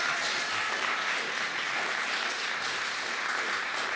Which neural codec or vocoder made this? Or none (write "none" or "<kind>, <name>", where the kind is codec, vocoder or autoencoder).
vocoder, BigVGAN v2